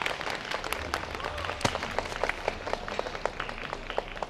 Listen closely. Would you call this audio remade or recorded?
recorded